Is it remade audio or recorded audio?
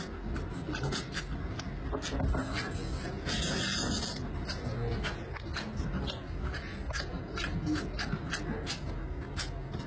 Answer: recorded